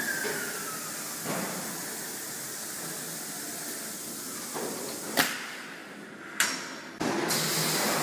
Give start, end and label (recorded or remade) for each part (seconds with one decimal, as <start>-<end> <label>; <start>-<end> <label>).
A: 0.0-8.0 recorded